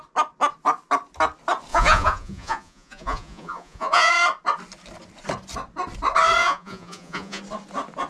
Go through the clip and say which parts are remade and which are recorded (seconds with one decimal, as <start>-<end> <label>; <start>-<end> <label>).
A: 0.0-1.7 recorded; 1.7-4.1 remade; 4.1-6.4 recorded; 6.4-7.4 remade; 7.4-8.1 recorded